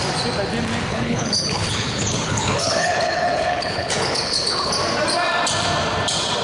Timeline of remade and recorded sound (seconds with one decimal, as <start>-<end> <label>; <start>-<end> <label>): 0.0-0.9 recorded; 0.9-4.7 remade; 4.7-6.4 recorded

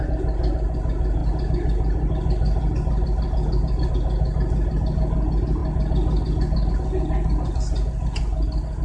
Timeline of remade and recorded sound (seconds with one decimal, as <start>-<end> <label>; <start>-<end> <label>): 0.0-8.8 recorded